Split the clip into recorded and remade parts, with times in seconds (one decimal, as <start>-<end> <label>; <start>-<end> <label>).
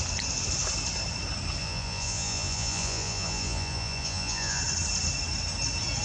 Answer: 0.0-1.6 recorded; 1.6-4.6 remade; 4.6-6.0 recorded